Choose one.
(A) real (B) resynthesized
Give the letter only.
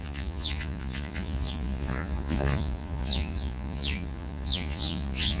B